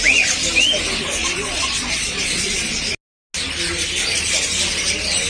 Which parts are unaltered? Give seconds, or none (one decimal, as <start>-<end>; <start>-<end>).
0.0-1.2; 2.9-5.3